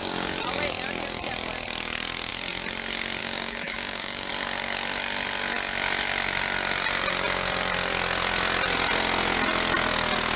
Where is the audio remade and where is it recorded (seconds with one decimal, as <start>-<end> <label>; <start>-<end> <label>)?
0.0-3.2 recorded; 3.2-4.3 remade; 4.3-10.4 recorded